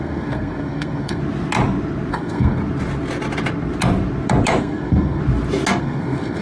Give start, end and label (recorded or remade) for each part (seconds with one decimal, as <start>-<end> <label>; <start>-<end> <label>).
0.0-1.2 remade; 1.2-2.1 recorded; 2.1-2.6 remade; 2.6-4.6 recorded; 4.6-5.2 remade; 5.2-5.8 recorded; 5.8-6.4 remade